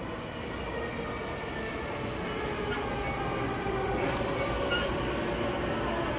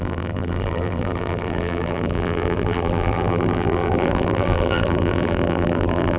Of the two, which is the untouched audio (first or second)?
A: first